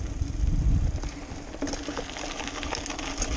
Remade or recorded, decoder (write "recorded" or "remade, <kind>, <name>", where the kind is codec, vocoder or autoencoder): recorded